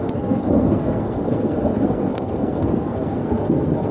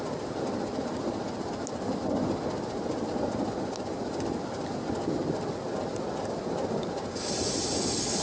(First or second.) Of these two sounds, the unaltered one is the second